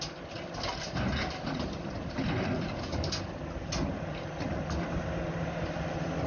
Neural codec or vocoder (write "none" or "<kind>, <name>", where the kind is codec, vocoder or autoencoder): none